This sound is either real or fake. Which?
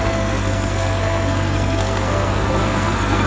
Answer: fake